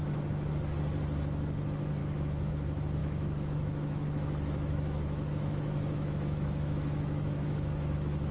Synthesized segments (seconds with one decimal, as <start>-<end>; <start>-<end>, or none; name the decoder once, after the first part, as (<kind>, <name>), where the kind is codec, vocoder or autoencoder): 2.0-2.5 (autoencoder, DAC-VAE); 3.0-8.3